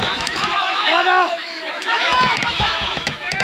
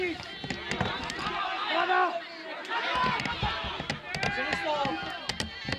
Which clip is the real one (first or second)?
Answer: second